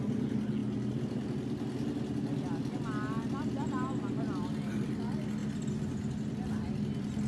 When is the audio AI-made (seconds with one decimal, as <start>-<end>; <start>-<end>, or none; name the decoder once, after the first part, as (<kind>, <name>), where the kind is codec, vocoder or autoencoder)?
none